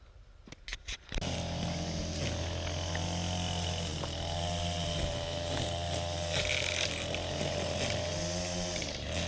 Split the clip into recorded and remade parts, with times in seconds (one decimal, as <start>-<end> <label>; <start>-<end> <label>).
0.0-9.3 recorded